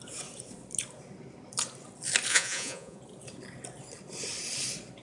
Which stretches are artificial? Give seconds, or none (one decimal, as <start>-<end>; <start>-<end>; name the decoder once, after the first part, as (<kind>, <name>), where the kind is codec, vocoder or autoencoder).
2.3-3.0 (vocoder, Vocos)